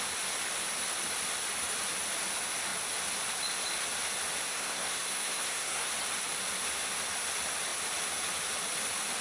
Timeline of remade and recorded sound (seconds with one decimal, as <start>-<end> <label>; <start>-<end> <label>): 0.0-4.5 recorded; 4.5-5.9 remade; 5.9-9.2 recorded

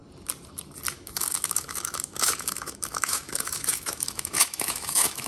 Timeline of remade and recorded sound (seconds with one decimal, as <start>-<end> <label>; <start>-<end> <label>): 0.0-0.9 recorded; 0.9-5.3 remade

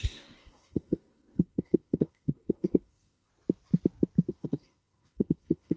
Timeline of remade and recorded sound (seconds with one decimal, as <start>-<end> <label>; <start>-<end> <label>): 0.0-3.3 remade; 3.3-4.3 recorded; 4.3-5.8 remade

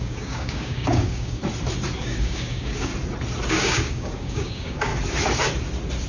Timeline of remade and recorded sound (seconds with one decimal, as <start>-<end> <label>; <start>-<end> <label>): 0.0-1.4 remade; 1.4-2.0 recorded; 2.0-2.9 remade; 2.9-3.5 recorded; 3.5-4.9 remade; 4.9-6.1 recorded

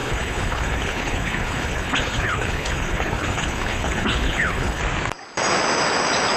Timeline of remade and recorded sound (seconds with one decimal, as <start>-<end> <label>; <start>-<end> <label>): 0.0-4.8 remade; 4.8-6.4 recorded

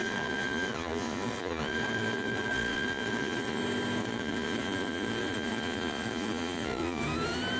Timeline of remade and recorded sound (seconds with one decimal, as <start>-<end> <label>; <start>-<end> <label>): 0.0-3.6 remade; 3.6-4.0 recorded; 4.0-7.0 remade; 7.0-7.6 recorded

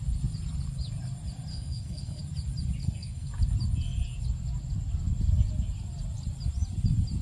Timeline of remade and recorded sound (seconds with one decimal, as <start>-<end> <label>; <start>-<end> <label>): 0.0-1.5 recorded; 1.5-2.2 remade; 2.2-2.8 recorded; 2.8-3.3 remade; 3.3-7.2 recorded